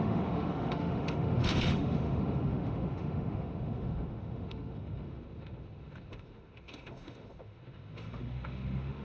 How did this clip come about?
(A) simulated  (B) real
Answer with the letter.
A